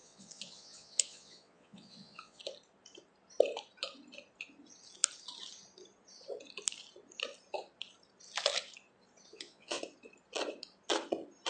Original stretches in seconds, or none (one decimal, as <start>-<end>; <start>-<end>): 2.4-9.3; 9.8-11.5

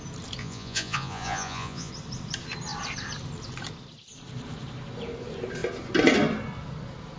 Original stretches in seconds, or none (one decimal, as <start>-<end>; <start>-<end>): 0.0-0.4; 1.9-7.2

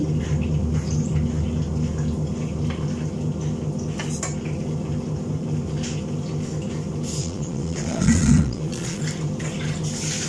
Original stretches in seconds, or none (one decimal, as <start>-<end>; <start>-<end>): 0.0-7.2; 9.0-10.3

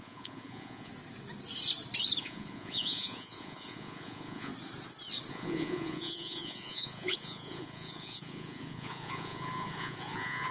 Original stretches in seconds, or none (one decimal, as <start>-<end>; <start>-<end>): 0.9-2.2; 4.5-5.3